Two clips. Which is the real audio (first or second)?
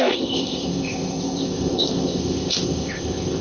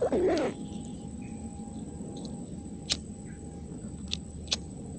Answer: second